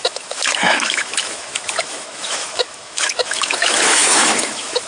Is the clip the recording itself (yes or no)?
no